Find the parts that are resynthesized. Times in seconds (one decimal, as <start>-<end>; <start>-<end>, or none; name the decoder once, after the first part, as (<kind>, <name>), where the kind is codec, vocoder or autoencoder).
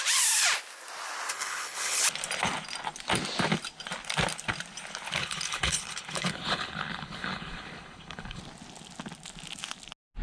1.3-2.0 (codec, HILCodec); 5.2-8.4